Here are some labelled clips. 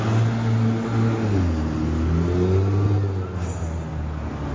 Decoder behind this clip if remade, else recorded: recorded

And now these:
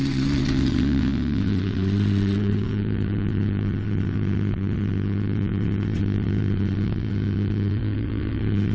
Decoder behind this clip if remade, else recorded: remade, vocoder, WaveNeXt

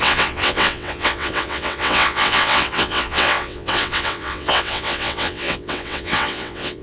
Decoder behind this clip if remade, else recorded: remade, vocoder, WaveNeXt